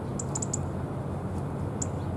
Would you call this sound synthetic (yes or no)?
no